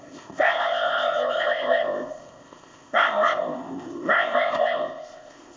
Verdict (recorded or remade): remade